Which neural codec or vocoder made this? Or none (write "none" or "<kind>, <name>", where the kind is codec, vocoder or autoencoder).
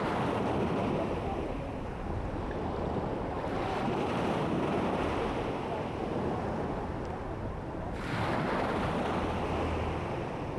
none